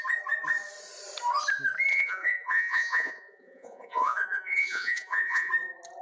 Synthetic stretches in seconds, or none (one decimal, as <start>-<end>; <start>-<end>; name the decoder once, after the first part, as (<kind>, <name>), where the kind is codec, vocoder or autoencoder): 1.9-5.5 (vocoder, Vocos)